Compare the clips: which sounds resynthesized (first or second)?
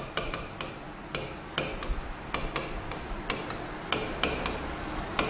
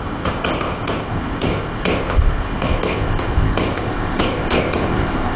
second